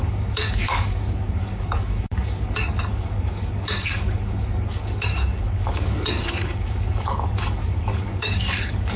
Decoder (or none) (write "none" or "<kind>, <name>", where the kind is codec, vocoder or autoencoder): codec, DAC